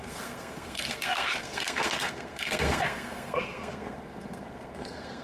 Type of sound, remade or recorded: remade